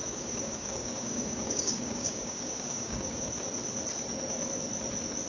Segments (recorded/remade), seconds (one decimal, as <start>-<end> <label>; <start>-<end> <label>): 0.0-3.2 remade; 3.2-5.3 recorded